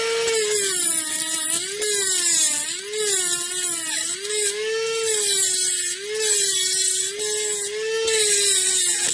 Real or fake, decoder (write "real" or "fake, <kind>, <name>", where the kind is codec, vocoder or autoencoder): real